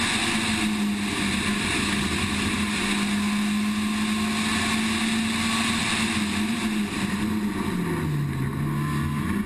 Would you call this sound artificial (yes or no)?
no